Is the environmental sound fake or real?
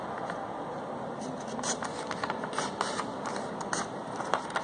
real